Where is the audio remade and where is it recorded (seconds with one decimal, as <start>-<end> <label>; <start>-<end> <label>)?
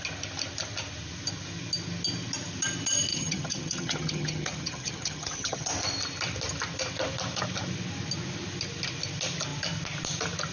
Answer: 0.0-3.1 recorded; 3.1-5.7 remade; 5.7-10.5 recorded